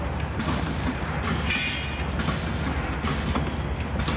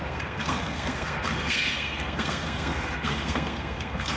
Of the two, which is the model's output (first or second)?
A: second